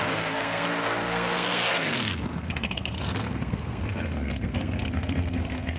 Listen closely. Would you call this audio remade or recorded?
remade